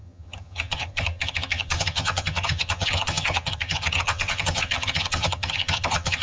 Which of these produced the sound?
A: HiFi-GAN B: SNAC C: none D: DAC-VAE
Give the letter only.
A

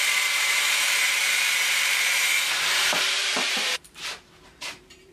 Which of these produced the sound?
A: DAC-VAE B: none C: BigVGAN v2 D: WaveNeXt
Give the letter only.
C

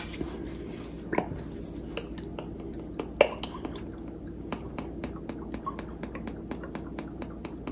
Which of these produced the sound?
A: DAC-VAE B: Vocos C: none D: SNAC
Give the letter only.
C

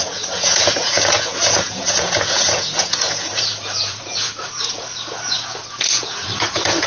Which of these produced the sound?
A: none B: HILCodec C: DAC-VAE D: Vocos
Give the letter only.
D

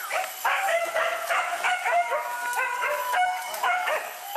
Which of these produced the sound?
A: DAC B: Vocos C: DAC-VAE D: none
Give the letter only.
A